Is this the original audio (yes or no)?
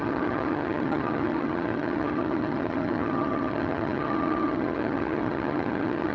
no